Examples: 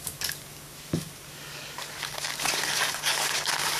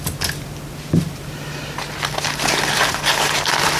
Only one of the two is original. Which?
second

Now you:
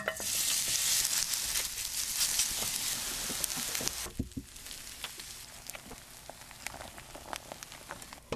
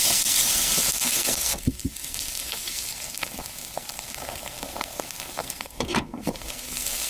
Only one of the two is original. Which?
first